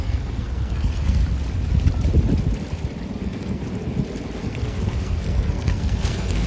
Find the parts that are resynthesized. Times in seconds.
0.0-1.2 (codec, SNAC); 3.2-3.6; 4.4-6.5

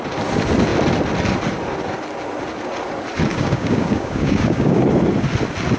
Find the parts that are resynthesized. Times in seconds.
3.3-4.8 (codec, DAC)

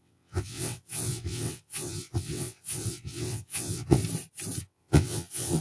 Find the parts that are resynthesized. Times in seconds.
0.0-4.0 (vocoder, WaveNeXt); 4.6-5.6

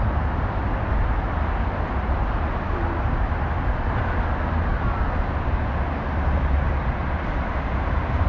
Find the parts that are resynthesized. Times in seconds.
none

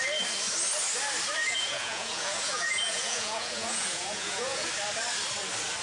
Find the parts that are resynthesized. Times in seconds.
1.4-4.7 (vocoder, Vocos)

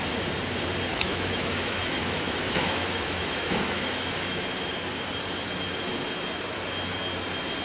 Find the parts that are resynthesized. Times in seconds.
0.9-4.4 (autoencoder, DAC-VAE)